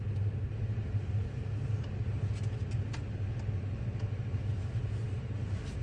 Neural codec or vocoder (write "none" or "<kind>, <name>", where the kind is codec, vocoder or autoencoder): none